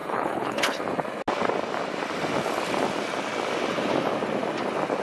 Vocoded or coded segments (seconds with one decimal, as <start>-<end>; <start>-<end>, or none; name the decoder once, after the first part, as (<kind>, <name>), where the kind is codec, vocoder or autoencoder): 0.0-0.8 (codec, HILCodec)